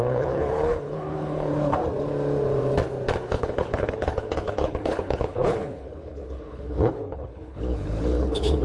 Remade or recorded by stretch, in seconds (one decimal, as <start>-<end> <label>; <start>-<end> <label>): 0.0-1.8 remade; 1.8-3.2 recorded; 3.2-8.6 remade